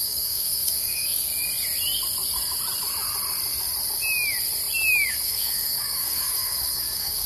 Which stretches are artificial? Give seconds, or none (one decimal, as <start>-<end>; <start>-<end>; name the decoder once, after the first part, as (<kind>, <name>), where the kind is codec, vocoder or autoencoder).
0.0-1.3 (codec, DAC); 5.1-7.3